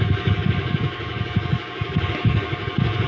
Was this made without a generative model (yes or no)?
no